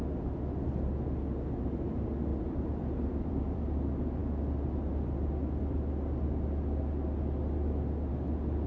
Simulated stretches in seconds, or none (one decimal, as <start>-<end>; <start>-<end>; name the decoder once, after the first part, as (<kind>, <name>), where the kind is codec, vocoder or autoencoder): 2.3-3.8 (vocoder, BigVGAN v2)